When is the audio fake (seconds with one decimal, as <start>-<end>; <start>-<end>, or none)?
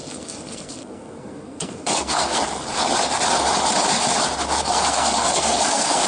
0.0-2.4; 4.6-6.1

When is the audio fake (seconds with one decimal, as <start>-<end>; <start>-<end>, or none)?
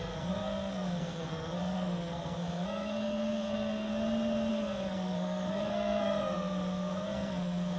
0.0-3.9; 4.5-7.8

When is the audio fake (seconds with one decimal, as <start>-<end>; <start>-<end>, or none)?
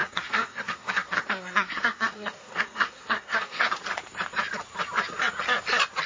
0.0-3.7